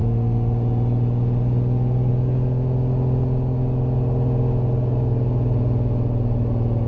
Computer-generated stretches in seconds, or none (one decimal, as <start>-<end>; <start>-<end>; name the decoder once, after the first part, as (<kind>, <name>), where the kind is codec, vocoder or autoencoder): none